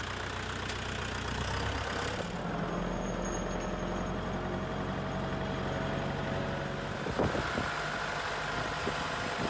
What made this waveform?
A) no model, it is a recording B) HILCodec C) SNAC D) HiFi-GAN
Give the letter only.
A